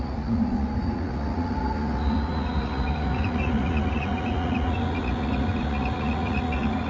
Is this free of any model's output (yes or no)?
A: no